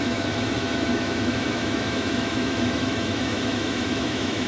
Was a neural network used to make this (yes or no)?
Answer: yes